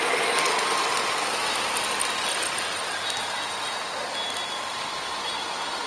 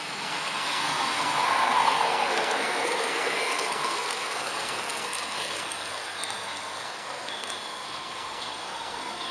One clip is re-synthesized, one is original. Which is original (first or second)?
first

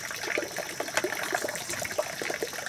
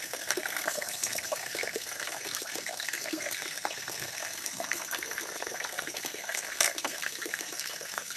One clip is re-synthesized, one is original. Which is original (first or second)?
first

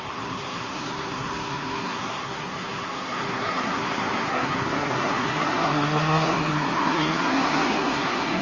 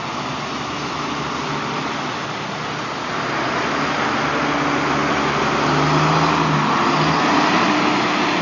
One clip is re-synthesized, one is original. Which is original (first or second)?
second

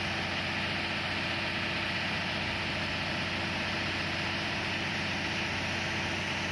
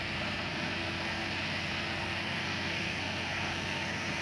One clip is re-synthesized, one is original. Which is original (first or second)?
first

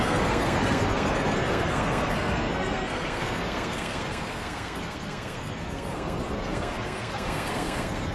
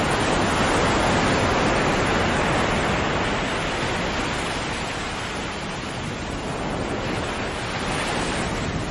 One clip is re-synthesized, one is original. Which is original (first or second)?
second